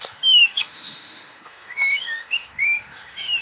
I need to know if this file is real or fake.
fake